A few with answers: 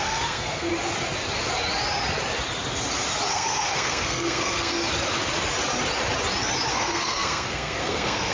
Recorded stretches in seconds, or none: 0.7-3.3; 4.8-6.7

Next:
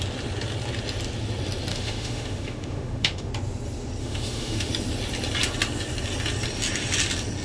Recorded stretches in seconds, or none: 0.0-1.7; 3.3-4.0; 4.7-7.4

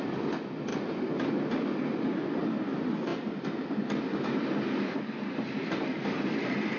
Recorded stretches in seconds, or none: 0.0-6.8